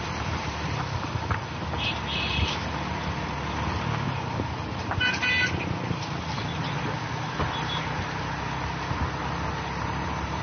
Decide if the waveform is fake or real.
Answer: real